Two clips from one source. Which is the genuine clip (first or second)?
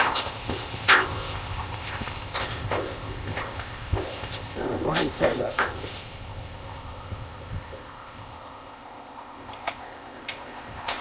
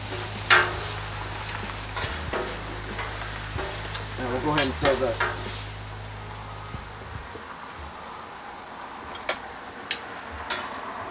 second